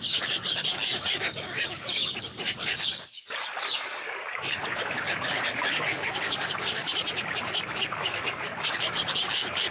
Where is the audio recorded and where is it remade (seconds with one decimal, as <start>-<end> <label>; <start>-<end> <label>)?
0.0-6.9 remade; 6.9-7.8 recorded; 7.8-9.7 remade